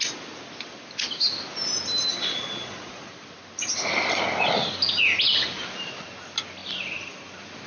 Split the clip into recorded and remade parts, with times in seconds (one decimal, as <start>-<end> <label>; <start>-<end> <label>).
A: 0.0-2.1 recorded; 2.1-3.1 remade; 3.1-7.7 recorded